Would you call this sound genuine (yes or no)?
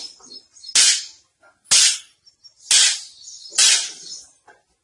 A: yes